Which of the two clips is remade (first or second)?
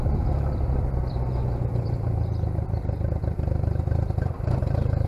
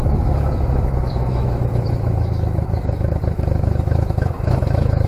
second